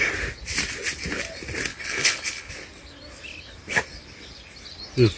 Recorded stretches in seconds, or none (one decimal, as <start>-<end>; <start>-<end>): 0.0-1.7; 2.5-5.2